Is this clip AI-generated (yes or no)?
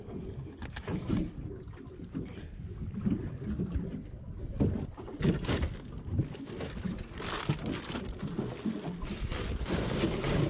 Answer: no